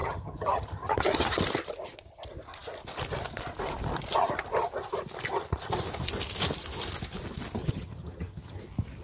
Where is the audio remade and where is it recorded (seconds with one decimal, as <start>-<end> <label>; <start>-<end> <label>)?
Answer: 0.0-1.4 remade; 1.4-7.6 recorded; 7.6-8.6 remade; 8.6-9.0 recorded